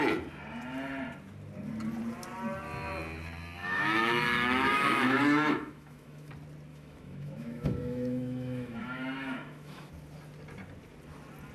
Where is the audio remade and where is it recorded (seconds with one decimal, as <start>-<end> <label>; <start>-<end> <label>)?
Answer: 0.0-3.6 recorded; 3.6-6.3 remade; 6.3-6.7 recorded; 6.7-9.9 remade; 9.9-11.5 recorded